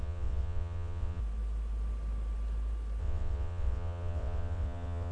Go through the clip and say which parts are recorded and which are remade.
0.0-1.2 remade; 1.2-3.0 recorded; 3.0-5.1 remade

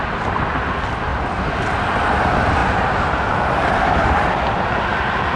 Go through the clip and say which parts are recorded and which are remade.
0.0-5.4 recorded

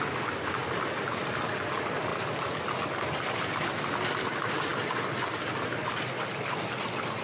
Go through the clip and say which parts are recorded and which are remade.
0.0-7.2 recorded

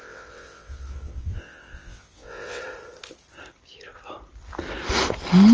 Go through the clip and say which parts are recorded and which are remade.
0.0-2.6 remade; 2.6-5.5 recorded